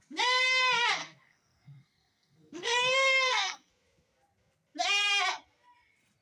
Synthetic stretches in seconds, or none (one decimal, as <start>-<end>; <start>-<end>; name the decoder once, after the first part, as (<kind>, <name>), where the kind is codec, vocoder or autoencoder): 1.0-3.7 (codec, SNAC)